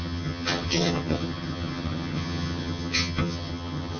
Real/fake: fake